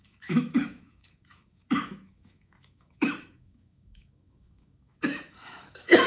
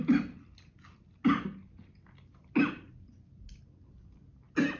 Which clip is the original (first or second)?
second